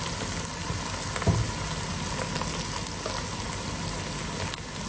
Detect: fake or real real